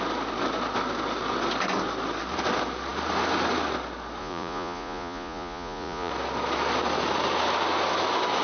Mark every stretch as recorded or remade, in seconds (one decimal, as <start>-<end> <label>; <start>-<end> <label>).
0.0-4.2 recorded; 4.2-6.1 remade; 6.1-8.4 recorded